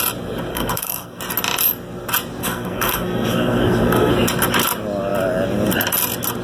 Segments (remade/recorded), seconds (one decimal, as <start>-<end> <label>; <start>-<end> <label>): 0.0-0.5 recorded; 0.5-1.2 remade; 1.2-2.4 recorded; 2.4-4.1 remade; 4.1-6.4 recorded